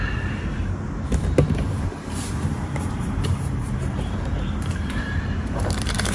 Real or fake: fake